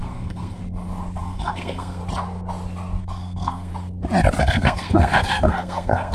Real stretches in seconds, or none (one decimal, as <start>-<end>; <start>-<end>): 0.6-1.2; 2.0-3.0; 3.7-4.4